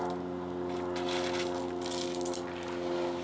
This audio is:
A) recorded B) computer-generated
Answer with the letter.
A